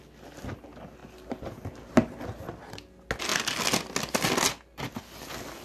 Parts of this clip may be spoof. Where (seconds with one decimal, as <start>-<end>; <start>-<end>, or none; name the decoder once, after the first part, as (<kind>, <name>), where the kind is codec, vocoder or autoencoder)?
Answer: none